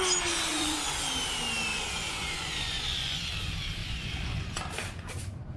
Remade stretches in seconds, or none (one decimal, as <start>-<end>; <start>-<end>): 0.5-1.1; 1.7-3.2; 3.8-4.6